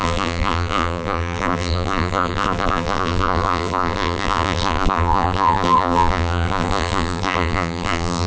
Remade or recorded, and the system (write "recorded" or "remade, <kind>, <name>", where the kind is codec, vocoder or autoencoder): remade, vocoder, BigVGAN v2